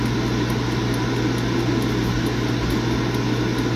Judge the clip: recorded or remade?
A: recorded